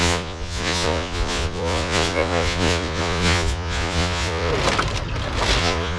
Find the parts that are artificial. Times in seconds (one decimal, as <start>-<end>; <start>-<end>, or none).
0.0-4.5; 5.6-6.0